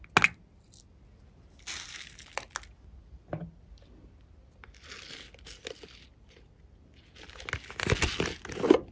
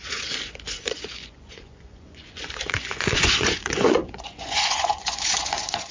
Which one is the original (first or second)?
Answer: first